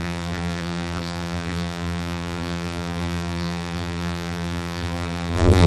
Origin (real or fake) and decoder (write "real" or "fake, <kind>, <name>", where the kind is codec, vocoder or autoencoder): fake, vocoder, BigVGAN v2